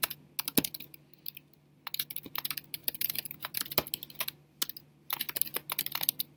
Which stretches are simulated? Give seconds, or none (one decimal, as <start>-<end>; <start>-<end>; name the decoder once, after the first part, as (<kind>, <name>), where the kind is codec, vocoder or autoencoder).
2.8-3.6 (vocoder, BigVGAN v2)